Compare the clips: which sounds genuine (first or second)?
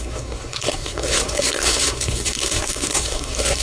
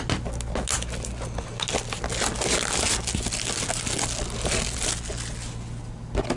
second